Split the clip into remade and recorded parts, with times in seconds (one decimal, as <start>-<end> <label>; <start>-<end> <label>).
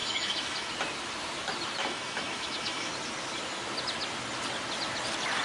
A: 0.0-0.7 remade; 0.7-1.8 recorded; 1.8-2.9 remade; 2.9-5.4 recorded